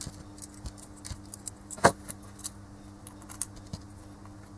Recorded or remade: recorded